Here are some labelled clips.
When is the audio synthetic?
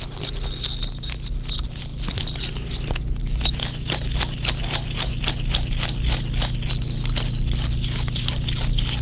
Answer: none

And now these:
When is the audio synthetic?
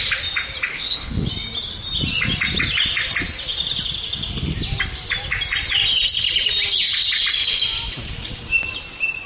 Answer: 0.7-1.3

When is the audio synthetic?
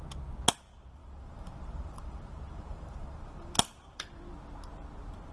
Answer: 1.0-4.2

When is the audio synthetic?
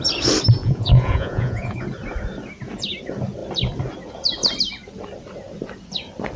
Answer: 0.6-1.8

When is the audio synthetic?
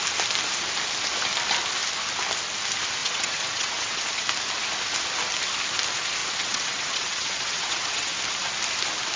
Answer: 3.0-4.0; 6.2-8.1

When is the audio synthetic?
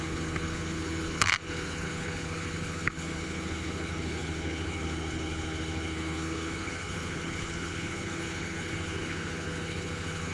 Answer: 0.0-10.3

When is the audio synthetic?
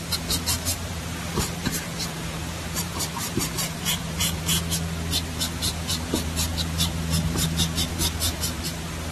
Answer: 0.7-4.4; 5.3-8.6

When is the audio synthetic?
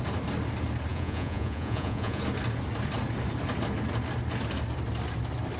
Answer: 0.9-2.2